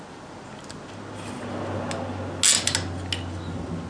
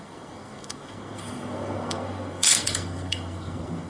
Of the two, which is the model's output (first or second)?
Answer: second